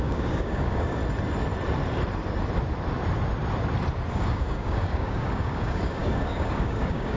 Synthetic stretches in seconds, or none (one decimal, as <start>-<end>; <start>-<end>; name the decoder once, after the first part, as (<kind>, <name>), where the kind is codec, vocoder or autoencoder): 0.0-1.0 (codec, DAC); 4.1-7.2